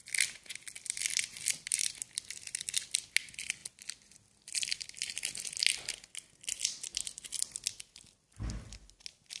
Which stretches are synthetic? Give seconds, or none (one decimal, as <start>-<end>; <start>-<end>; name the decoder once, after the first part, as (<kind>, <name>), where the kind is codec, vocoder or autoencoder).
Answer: none